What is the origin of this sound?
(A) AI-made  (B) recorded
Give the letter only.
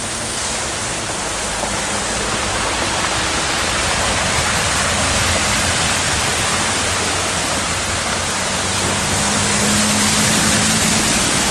B